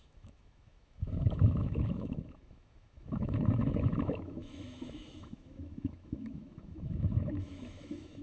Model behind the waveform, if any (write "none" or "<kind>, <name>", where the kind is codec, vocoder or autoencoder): autoencoder, DAC-VAE